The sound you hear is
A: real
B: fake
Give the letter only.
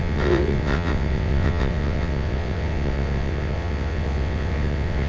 B